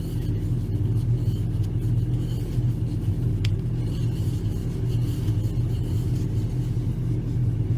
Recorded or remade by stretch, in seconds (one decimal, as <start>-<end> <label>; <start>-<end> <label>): 0.0-7.8 recorded